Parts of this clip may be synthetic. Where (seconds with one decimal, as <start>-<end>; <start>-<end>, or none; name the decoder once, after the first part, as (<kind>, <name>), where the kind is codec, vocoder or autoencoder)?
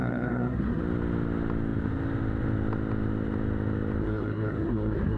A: 0.0-0.8 (codec, SNAC); 4.0-5.2